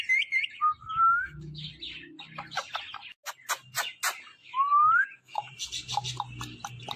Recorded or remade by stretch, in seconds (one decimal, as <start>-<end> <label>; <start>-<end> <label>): 0.0-1.0 recorded; 1.0-1.7 remade; 1.7-4.4 recorded; 4.4-5.5 remade; 5.5-7.0 recorded